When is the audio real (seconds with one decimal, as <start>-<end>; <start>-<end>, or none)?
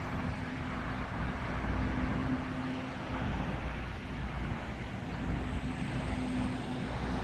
0.0-7.2